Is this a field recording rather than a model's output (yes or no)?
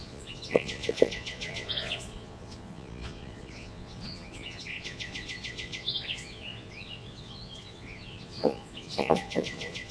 no